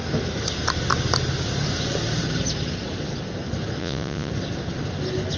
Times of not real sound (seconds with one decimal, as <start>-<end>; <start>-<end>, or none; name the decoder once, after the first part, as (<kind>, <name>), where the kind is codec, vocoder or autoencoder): 3.8-4.3 (vocoder, Vocos)